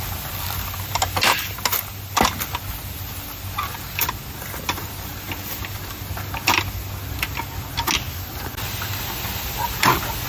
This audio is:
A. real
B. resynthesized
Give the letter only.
A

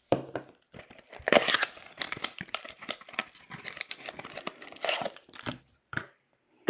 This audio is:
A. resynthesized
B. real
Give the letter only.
A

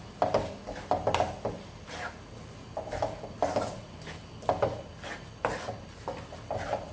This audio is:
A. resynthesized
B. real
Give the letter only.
B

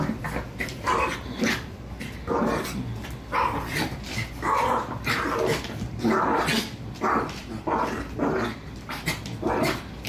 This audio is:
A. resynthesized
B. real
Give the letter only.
B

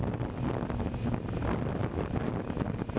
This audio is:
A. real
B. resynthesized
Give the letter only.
A